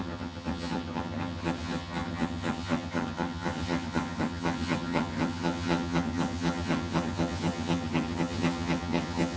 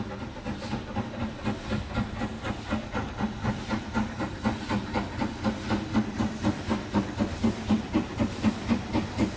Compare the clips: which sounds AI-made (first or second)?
first